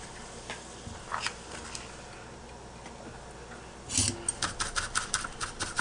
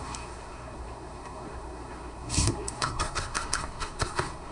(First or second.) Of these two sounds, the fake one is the second